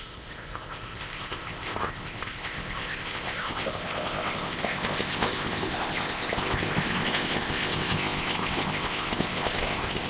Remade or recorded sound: remade